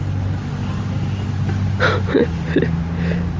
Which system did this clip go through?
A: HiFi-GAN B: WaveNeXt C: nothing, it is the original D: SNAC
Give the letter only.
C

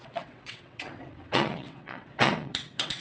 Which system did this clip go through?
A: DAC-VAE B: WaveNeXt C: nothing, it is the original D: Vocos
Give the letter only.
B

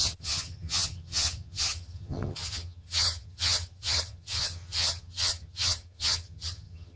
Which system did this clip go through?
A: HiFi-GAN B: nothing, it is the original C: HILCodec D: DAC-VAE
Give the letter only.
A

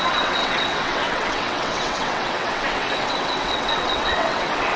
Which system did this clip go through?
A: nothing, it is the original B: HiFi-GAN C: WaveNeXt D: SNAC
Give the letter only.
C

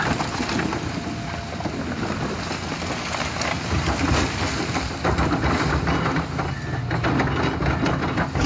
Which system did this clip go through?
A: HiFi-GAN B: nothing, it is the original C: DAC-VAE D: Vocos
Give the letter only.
B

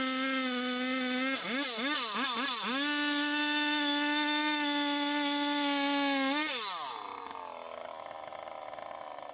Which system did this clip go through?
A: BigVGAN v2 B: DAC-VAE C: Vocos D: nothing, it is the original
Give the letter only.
D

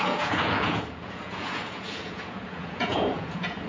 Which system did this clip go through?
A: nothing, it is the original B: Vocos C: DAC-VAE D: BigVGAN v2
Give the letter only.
B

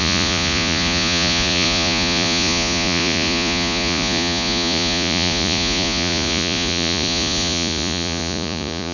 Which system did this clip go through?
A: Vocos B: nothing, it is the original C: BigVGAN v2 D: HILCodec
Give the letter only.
A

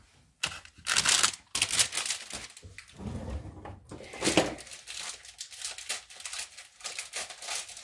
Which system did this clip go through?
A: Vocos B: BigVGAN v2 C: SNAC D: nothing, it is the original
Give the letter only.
D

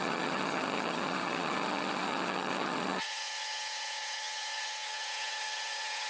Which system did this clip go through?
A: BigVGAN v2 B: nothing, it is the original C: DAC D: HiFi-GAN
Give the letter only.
D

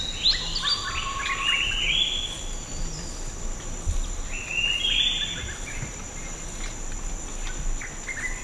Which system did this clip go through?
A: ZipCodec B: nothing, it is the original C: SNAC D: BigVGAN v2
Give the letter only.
B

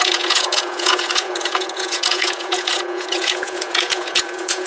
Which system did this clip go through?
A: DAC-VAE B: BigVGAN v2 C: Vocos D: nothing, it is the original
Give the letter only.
C